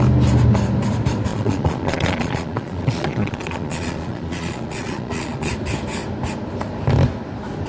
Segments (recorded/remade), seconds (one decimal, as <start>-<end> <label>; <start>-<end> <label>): 0.0-1.3 recorded; 1.3-5.5 remade; 5.5-7.7 recorded